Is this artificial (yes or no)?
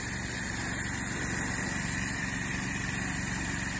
yes